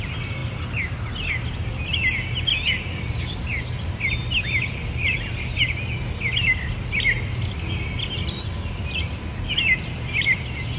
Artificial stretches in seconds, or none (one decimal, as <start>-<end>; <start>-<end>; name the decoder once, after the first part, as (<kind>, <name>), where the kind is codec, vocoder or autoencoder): none